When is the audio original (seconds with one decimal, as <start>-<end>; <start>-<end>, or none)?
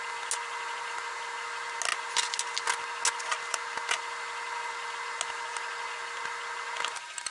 0.0-7.3